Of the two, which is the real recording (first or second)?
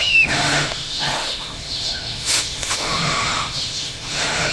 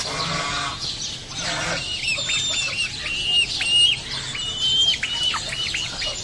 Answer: second